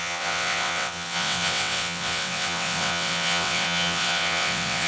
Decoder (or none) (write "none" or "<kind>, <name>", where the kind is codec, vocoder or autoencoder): vocoder, WaveNeXt